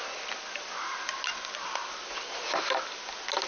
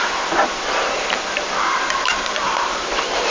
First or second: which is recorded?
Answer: first